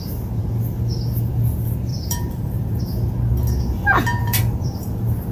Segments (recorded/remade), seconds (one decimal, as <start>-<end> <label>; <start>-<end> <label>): 0.0-1.9 recorded; 1.9-2.8 remade; 2.8-4.2 recorded; 4.2-4.8 remade; 4.8-5.3 recorded